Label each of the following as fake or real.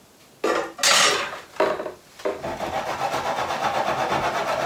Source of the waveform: real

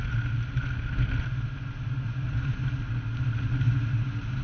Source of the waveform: real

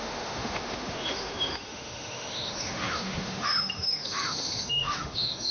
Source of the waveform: fake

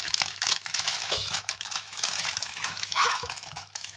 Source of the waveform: fake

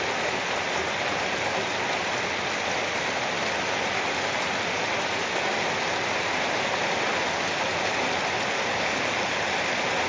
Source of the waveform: real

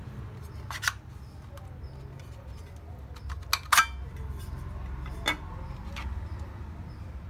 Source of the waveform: real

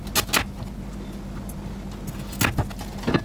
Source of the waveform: real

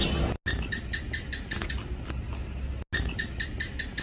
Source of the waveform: real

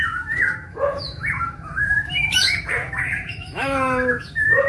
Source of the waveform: fake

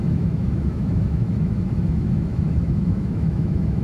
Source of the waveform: fake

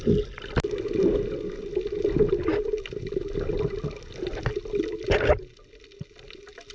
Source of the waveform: real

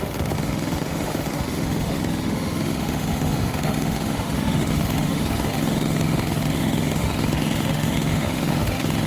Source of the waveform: fake